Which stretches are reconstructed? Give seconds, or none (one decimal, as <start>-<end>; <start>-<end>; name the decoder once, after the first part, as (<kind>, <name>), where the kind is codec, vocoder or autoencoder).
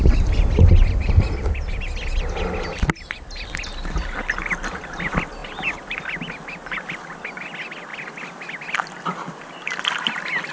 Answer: none